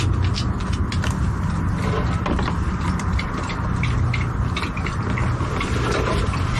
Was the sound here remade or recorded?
recorded